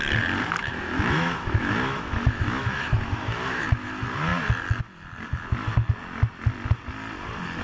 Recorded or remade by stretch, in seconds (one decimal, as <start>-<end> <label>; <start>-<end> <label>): 0.0-0.6 recorded; 0.6-3.9 remade; 3.9-7.6 recorded